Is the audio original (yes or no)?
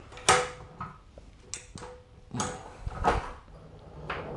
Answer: yes